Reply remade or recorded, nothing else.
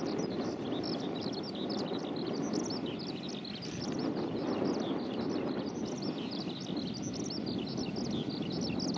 recorded